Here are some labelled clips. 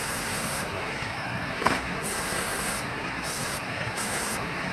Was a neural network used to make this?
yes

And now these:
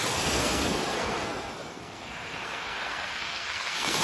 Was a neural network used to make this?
yes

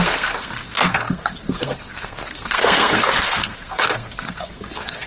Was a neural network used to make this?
yes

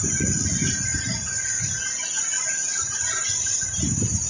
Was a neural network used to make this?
no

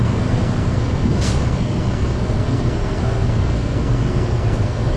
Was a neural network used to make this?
yes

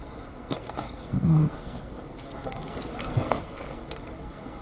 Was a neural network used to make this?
yes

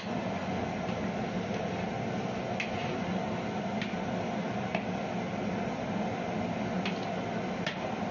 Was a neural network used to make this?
no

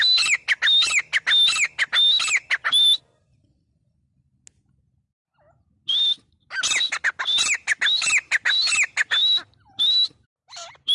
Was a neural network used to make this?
no